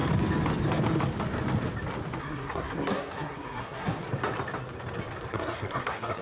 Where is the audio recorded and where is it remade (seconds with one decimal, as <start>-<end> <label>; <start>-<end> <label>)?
0.0-2.2 recorded; 2.2-4.0 remade; 4.0-5.3 recorded; 5.3-6.2 remade